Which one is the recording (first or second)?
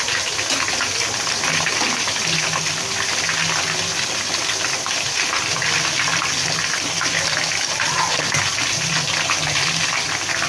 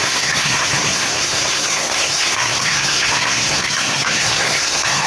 first